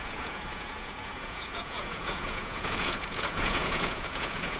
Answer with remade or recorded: remade